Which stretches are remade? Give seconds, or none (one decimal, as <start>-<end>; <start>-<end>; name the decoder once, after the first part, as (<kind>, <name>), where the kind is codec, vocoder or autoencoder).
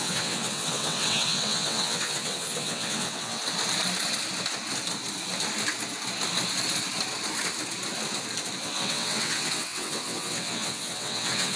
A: 0.0-3.4 (vocoder, WaveNeXt); 8.6-11.6